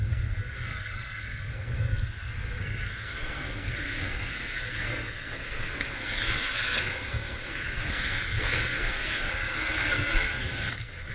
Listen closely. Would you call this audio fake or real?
fake